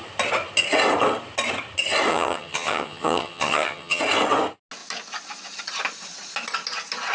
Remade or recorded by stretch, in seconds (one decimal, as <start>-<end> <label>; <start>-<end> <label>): 0.0-2.1 recorded; 2.1-4.0 remade; 4.0-7.1 recorded